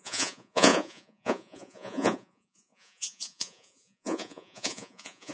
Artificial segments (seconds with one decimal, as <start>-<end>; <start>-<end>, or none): 0.0-5.3